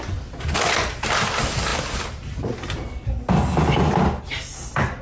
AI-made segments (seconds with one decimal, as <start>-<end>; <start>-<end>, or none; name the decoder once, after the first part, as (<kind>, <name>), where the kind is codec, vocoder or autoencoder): none